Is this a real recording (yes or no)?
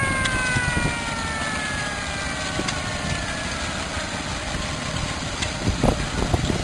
yes